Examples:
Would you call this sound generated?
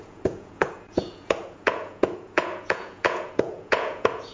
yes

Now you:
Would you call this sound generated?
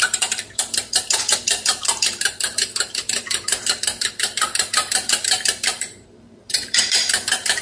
yes